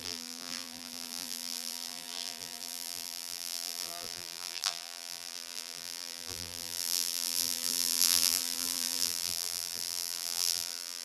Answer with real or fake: fake